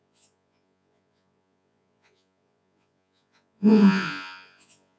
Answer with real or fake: fake